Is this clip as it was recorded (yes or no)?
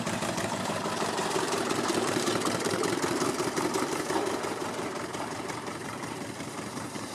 no